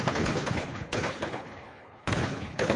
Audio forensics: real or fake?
fake